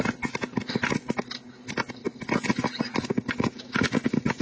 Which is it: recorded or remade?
recorded